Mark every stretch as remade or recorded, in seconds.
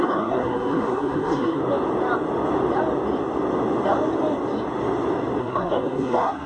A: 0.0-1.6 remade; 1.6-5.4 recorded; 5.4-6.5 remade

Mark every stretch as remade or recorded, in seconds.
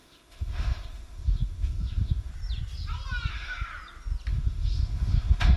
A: 0.0-2.3 remade; 2.3-3.3 recorded; 3.3-3.7 remade; 3.7-4.3 recorded; 4.3-5.6 remade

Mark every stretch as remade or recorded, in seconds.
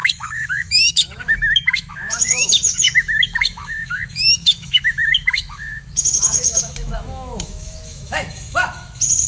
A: 0.0-9.3 remade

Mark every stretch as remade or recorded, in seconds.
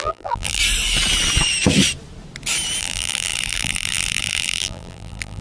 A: 0.0-0.6 remade; 0.6-2.8 recorded; 2.8-5.4 remade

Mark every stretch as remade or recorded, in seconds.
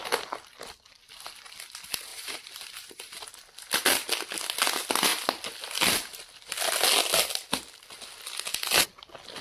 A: 0.0-2.1 recorded; 2.1-3.2 remade; 3.2-9.4 recorded